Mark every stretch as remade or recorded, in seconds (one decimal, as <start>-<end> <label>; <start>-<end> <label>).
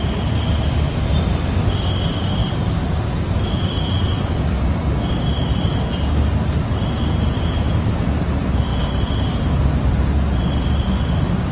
0.0-2.4 recorded; 2.4-4.4 remade; 4.4-11.5 recorded